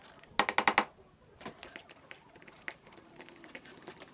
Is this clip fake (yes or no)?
no